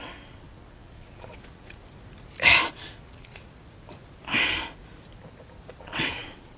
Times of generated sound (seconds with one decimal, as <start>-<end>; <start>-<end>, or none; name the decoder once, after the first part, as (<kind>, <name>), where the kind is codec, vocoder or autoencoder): 0.0-1.8 (vocoder, WaveNeXt); 2.8-3.3; 5.8-6.6